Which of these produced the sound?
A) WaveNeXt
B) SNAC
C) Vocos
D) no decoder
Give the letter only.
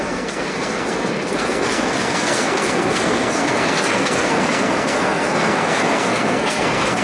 B